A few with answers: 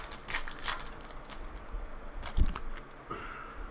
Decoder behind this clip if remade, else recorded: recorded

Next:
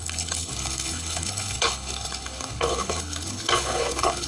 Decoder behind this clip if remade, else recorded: remade, codec, HILCodec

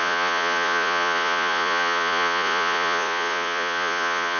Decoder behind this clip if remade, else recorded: remade, vocoder, Vocos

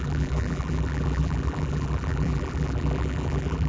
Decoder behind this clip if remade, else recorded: remade, vocoder, BigVGAN v2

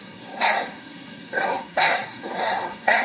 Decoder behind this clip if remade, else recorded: remade, codec, SNAC